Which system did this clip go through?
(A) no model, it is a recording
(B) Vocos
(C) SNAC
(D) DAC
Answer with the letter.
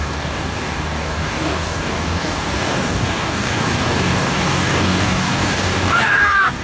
D